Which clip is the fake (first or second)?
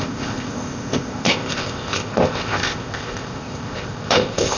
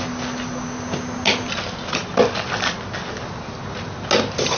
first